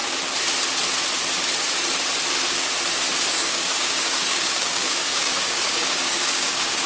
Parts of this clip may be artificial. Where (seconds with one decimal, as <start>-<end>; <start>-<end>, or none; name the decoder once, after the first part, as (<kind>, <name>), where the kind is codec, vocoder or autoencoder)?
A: 3.3-6.9 (codec, DAC)